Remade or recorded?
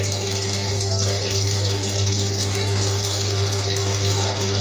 remade